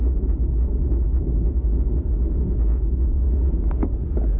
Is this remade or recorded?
remade